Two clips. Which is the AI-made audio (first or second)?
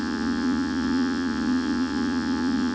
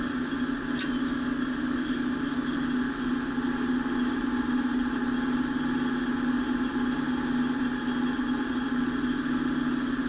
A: first